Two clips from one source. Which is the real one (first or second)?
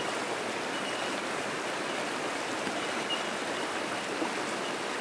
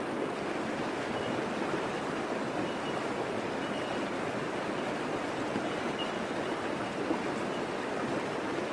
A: second